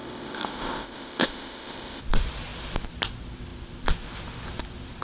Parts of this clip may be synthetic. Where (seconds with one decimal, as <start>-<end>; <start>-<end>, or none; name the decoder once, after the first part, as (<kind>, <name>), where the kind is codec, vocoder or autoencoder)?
0.0-2.0 (codec, ZipCodec)